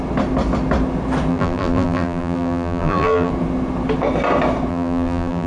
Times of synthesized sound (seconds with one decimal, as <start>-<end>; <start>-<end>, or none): 1.3-3.3; 4.7-5.5